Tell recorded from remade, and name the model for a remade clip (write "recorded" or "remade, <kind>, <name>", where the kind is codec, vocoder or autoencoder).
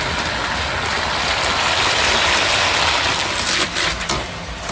recorded